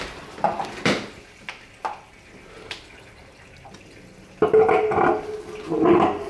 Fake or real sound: real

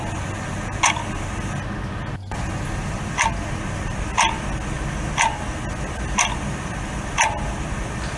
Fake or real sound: real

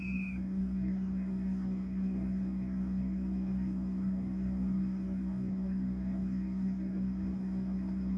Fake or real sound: fake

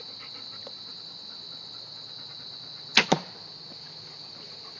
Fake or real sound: real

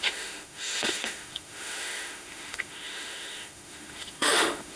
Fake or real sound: fake